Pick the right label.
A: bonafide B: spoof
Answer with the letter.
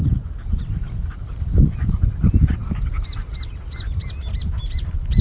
A